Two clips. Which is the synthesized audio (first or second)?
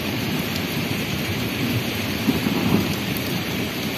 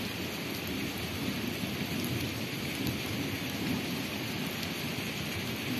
first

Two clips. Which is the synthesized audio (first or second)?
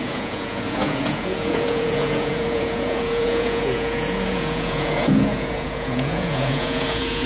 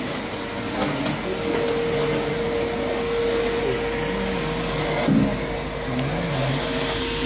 first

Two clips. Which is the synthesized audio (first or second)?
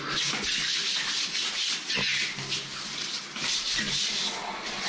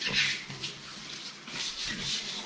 second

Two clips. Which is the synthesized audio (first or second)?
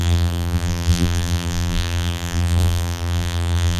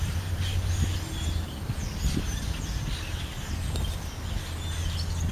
first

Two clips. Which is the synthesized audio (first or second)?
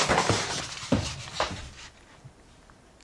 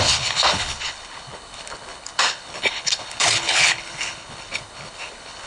second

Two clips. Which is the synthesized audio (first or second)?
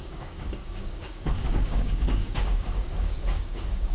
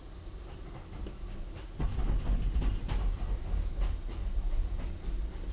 first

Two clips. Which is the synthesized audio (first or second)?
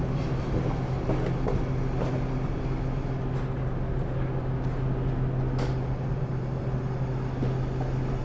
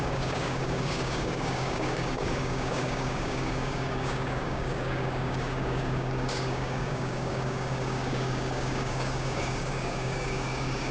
second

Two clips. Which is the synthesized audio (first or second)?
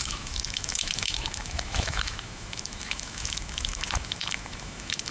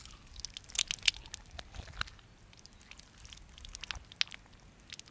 first